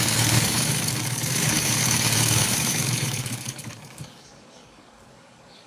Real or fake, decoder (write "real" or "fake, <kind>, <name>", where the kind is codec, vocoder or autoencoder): fake, codec, DAC